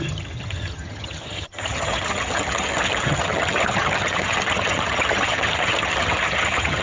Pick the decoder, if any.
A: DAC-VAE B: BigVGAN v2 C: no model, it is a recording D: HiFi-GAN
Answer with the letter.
D